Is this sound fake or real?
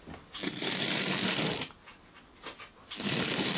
real